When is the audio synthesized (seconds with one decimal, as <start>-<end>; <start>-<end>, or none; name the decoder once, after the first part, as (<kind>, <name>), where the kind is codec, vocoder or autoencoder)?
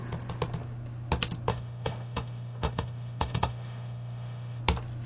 1.5-4.6 (autoencoder, DAC-VAE)